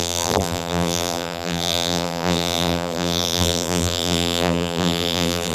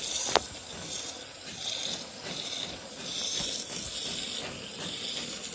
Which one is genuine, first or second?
second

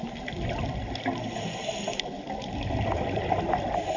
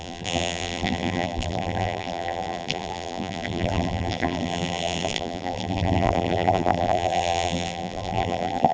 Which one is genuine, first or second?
first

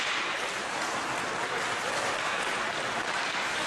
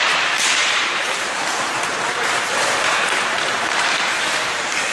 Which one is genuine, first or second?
first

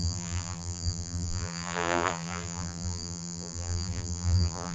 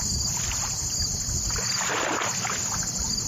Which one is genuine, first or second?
second